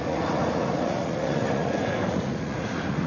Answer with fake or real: fake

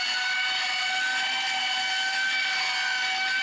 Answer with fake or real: real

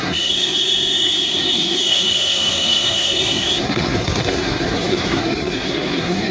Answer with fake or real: fake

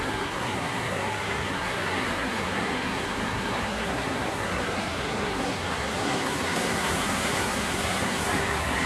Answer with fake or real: fake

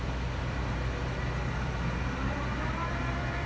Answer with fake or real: fake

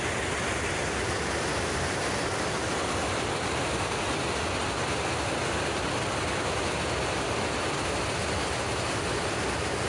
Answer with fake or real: real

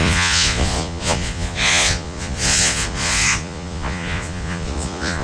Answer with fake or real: fake